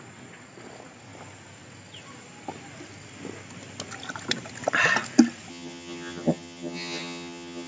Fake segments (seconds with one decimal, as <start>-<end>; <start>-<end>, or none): 5.5-7.7